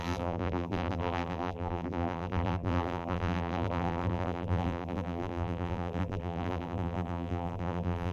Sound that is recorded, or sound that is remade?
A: remade